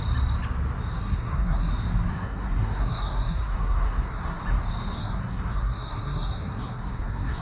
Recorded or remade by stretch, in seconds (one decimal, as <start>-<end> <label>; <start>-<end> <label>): 0.0-1.0 recorded; 1.0-1.7 remade; 1.7-2.1 recorded; 2.1-4.4 remade; 4.4-5.0 recorded; 5.0-7.4 remade